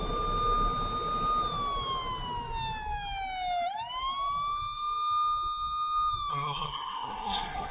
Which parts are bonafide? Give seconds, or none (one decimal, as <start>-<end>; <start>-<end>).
0.0-6.3